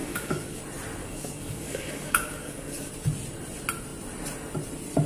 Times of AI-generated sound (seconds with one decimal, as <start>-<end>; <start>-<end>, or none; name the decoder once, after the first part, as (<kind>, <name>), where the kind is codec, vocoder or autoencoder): 0.0-0.6 (codec, DAC); 1.0-2.9